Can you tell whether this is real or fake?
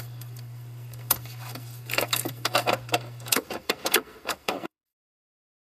fake